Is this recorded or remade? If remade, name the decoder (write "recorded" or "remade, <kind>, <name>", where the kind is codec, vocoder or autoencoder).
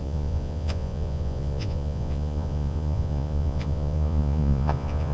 remade, vocoder, Vocos